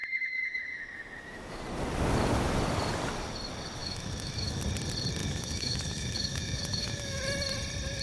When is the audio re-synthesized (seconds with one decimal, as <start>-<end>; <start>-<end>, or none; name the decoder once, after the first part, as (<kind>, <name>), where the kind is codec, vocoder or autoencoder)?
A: 0.0-1.6 (autoencoder, DAC-VAE); 3.8-4.6; 5.2-7.2